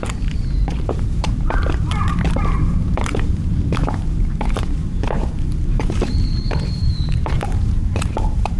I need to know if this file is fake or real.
fake